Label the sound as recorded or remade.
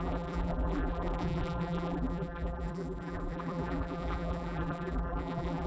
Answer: remade